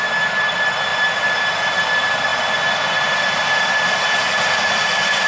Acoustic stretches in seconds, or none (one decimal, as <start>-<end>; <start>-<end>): 0.0-5.3